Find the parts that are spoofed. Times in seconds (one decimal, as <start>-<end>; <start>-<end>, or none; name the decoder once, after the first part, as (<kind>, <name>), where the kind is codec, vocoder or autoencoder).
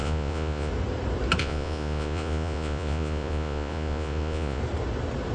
0.0-0.7 (vocoder, Vocos); 1.4-4.6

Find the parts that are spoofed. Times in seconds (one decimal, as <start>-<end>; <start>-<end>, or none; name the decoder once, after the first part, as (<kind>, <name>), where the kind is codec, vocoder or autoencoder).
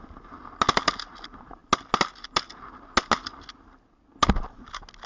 none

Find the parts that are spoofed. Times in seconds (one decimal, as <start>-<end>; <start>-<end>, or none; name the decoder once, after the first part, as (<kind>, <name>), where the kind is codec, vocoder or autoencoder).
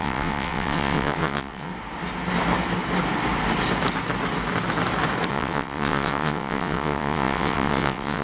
0.0-1.7 (vocoder, WaveNeXt); 5.3-8.2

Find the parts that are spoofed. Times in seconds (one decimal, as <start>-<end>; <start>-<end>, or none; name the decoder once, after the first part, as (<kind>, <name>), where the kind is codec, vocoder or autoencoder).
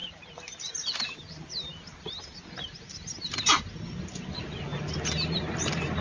none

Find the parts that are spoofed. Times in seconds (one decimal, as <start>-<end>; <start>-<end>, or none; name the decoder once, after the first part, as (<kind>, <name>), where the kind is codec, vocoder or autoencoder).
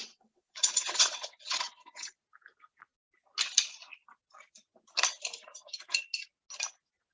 0.0-2.2 (vocoder, WaveNeXt)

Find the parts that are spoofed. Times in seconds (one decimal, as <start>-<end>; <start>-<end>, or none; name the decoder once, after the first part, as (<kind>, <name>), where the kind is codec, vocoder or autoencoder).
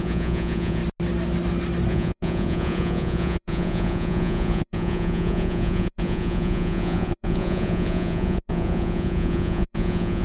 0.0-0.8 (vocoder, Vocos); 1.9-10.2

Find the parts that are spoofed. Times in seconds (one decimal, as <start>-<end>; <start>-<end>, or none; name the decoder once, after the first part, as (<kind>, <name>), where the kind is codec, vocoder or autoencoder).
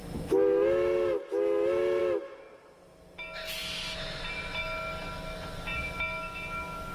none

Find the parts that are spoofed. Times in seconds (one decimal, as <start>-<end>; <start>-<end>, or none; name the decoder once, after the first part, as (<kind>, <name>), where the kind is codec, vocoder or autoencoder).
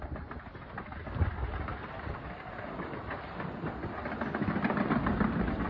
1.7-5.1 (vocoder, BigVGAN v2)